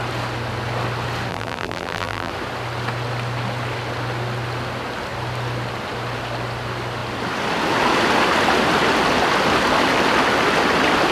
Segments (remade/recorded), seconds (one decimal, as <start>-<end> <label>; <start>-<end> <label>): 0.0-1.3 recorded; 1.3-2.3 remade; 2.3-11.1 recorded